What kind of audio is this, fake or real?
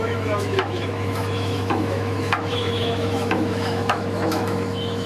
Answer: fake